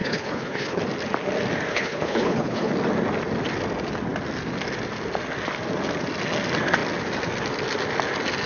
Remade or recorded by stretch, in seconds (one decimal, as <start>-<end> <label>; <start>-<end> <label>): 0.0-0.8 remade; 0.8-1.7 recorded; 1.7-2.7 remade; 2.7-8.5 recorded